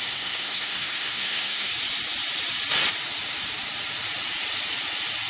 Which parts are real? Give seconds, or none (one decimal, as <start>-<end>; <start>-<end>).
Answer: 1.7-5.3